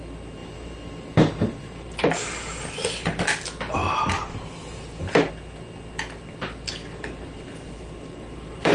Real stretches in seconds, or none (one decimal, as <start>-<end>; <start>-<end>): 0.0-0.4; 3.2-3.8; 5.3-6.8